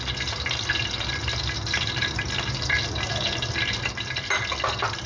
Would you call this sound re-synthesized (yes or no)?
no